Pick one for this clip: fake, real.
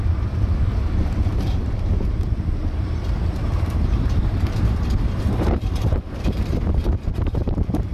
fake